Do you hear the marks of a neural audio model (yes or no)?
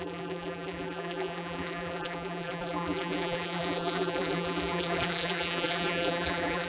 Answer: yes